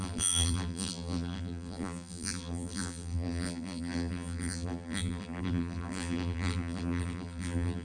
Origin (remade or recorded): remade